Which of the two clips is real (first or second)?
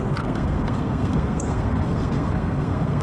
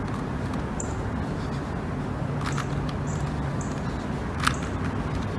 second